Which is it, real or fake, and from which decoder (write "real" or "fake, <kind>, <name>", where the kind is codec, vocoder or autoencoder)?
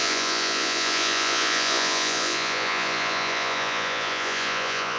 fake, vocoder, Vocos